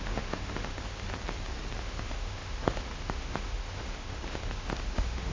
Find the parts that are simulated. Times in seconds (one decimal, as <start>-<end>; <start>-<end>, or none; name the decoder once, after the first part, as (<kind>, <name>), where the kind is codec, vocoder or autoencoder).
0.0-1.1 (autoencoder, DAC-VAE); 1.8-5.3